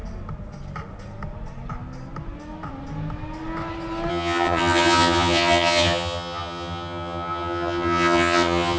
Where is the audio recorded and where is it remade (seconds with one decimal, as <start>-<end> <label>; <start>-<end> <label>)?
0.0-4.1 recorded; 4.1-8.8 remade